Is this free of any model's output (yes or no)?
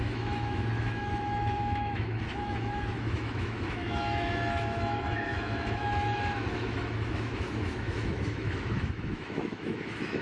no